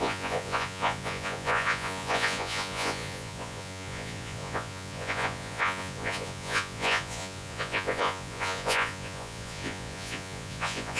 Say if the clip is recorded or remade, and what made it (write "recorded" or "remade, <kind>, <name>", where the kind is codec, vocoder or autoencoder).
remade, vocoder, Vocos